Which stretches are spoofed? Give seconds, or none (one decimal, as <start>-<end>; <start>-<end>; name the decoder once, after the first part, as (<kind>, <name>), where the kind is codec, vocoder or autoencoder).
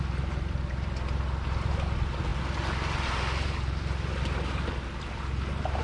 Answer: none